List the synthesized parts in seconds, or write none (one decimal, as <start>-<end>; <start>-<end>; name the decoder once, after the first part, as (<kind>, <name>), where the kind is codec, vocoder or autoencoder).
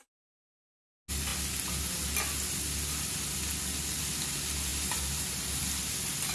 none